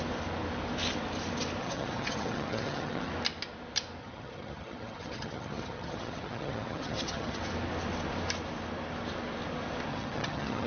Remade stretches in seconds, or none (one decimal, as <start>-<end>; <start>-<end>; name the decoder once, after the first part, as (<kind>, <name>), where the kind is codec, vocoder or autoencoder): 1.6-3.1 (vocoder, HiFi-GAN); 4.0-7.4; 9.9-10.7